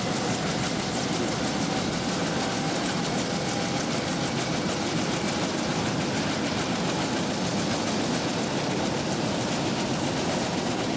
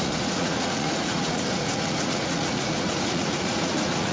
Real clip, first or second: first